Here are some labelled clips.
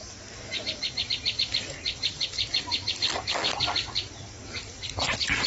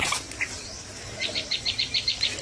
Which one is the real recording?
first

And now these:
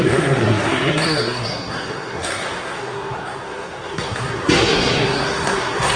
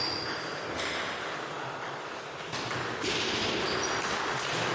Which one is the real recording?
second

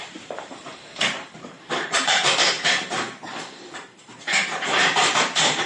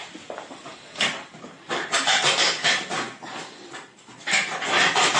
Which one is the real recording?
second